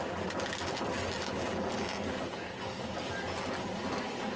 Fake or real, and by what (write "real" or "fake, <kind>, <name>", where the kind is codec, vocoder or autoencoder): real